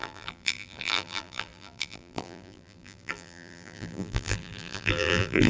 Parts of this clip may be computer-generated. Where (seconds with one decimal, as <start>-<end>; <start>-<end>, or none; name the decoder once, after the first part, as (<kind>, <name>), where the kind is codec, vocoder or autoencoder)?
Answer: 0.0-5.5 (vocoder, BigVGAN v2)